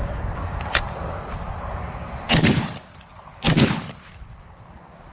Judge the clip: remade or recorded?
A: recorded